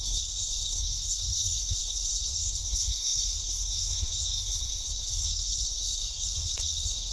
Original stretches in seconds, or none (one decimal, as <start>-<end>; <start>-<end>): none